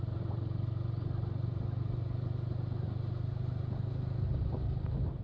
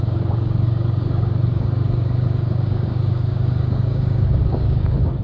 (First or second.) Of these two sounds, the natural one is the first